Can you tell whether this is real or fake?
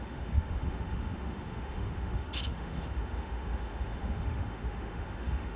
fake